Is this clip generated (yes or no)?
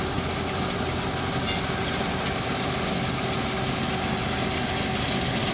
no